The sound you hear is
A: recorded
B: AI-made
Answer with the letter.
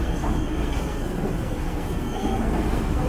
B